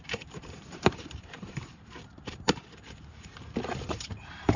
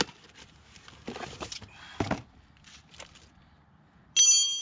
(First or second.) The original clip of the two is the second